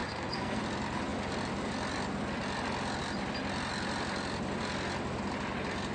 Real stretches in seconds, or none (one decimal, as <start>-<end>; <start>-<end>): 0.6-5.9